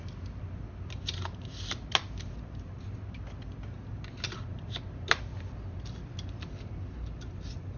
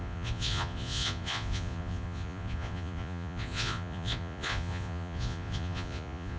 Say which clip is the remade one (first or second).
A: second